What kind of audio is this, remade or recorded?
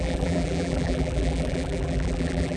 remade